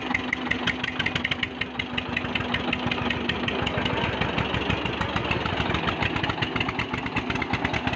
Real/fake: real